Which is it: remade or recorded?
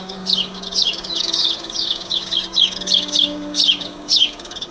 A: remade